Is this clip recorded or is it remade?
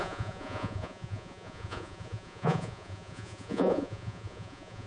remade